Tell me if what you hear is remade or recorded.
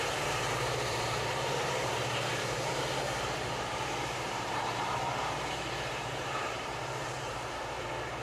remade